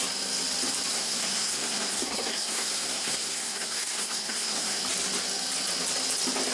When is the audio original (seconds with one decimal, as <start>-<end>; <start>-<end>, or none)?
0.0-0.9; 4.8-6.5